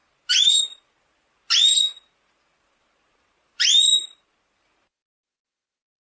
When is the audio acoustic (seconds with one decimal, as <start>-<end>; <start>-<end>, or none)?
0.0-6.2